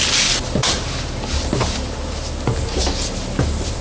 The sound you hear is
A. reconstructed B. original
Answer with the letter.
B